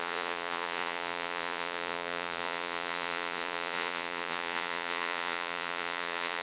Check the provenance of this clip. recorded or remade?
remade